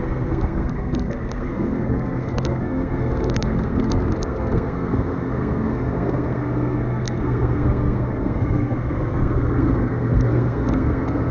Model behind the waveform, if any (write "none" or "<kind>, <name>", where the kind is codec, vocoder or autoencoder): codec, SNAC